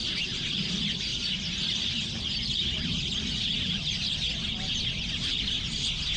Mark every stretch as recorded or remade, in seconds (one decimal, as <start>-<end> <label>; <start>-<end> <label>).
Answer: 0.0-6.2 recorded